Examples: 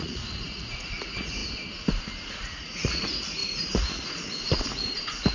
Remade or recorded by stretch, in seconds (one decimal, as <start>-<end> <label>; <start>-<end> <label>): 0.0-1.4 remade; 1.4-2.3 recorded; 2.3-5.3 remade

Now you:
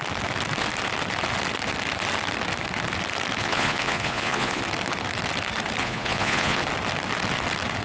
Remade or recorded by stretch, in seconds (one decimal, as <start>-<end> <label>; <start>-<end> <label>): 0.0-3.4 recorded; 3.4-4.6 remade; 4.6-5.8 recorded; 5.8-6.6 remade; 6.6-7.8 recorded

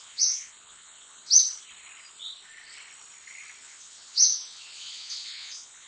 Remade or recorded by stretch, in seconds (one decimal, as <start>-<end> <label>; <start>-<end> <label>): 0.0-1.2 remade; 1.2-3.6 recorded; 3.6-5.9 remade